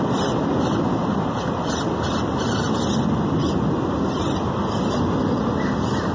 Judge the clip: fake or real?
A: real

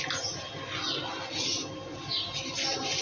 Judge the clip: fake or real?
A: real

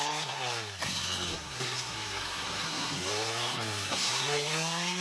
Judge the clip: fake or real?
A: fake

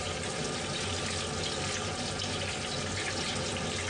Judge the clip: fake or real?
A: real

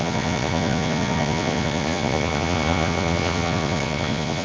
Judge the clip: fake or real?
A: fake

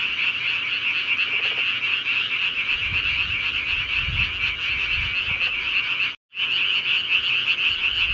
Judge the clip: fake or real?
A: real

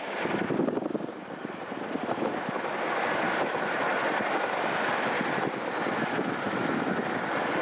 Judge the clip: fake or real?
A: real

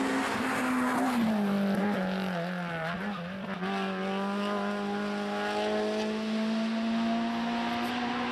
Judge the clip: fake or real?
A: real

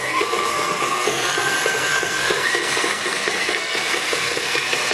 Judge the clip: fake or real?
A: fake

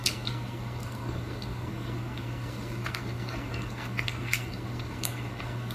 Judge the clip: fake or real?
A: fake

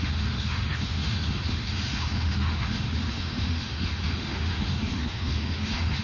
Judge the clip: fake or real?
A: fake